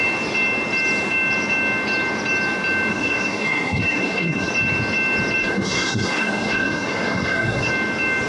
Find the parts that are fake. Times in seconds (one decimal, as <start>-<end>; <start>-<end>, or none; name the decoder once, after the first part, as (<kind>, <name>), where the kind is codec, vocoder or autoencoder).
2.9-4.5 (codec, SNAC); 5.4-7.7